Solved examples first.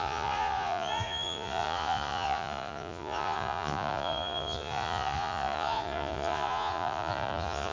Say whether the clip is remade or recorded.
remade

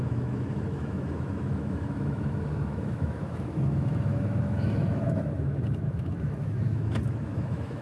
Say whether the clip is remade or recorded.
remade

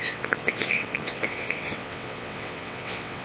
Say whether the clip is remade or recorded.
remade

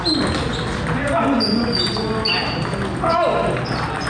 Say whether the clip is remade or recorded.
recorded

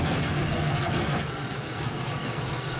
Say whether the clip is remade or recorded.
remade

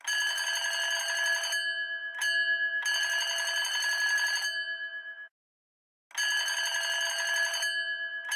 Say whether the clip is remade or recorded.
recorded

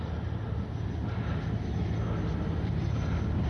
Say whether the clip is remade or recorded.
recorded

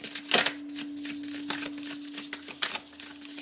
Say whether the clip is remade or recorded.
recorded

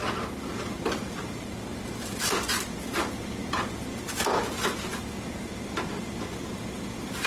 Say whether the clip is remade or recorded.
recorded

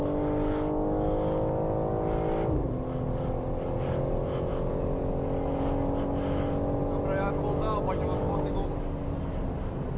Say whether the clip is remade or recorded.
recorded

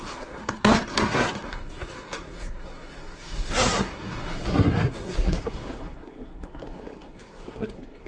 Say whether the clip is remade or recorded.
remade